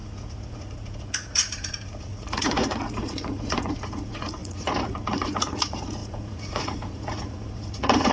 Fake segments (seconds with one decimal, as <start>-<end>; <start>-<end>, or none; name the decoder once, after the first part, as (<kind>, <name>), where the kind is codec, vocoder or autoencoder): 0.0-8.1 (vocoder, Vocos)